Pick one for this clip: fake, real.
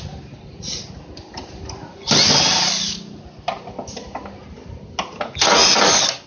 real